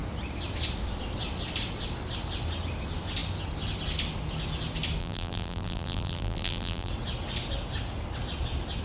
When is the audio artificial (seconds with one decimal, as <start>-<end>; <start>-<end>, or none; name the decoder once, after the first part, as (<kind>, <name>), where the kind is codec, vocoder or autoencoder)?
5.0-6.9 (vocoder, BigVGAN v2)